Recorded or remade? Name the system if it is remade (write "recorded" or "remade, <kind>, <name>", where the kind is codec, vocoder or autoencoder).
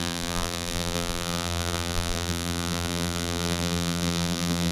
remade, vocoder, BigVGAN v2